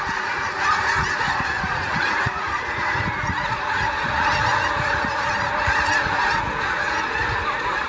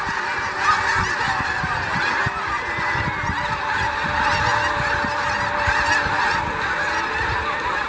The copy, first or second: first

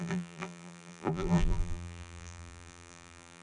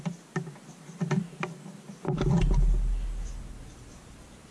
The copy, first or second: first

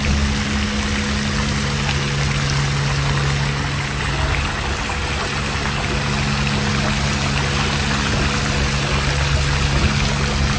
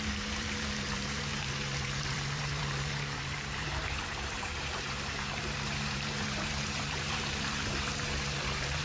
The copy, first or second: second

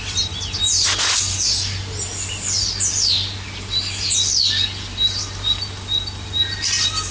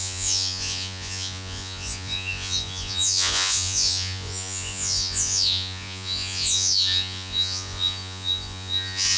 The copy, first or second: second